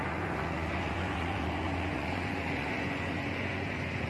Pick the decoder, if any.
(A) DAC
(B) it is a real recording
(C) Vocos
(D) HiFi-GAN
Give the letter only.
C